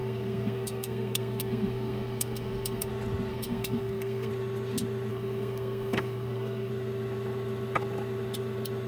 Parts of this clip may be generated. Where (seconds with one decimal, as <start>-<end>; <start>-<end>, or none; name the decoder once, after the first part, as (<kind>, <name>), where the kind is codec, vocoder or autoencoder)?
0.0-2.9 (codec, SNAC); 3.3-4.3; 5.1-6.7